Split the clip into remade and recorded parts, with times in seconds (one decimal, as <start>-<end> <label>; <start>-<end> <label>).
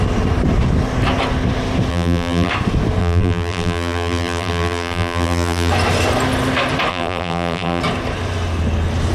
0.0-1.9 recorded; 1.9-2.5 remade; 2.5-3.0 recorded; 3.0-5.7 remade; 5.7-6.9 recorded; 6.9-7.8 remade; 7.8-9.1 recorded